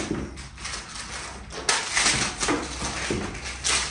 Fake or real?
real